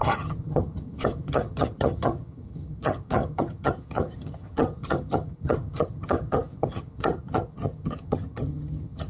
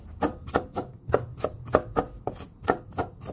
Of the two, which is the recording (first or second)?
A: second